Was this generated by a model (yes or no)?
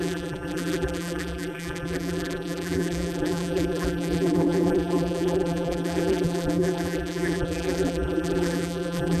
yes